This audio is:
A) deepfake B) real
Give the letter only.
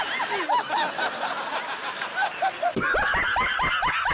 B